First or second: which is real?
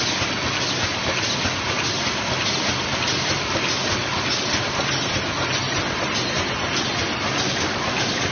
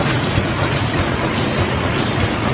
first